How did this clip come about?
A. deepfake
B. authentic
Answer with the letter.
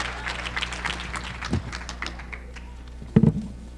B